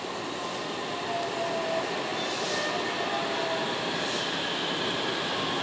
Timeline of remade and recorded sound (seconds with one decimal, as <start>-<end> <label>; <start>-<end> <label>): 0.0-5.6 recorded